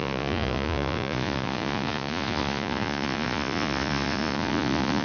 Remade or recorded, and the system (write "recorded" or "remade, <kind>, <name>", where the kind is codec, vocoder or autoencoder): remade, vocoder, Vocos